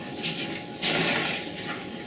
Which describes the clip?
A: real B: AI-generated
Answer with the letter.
A